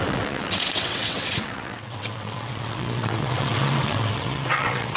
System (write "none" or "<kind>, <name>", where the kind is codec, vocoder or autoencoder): vocoder, WaveNeXt